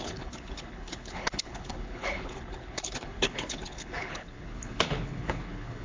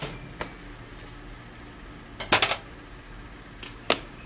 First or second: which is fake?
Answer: first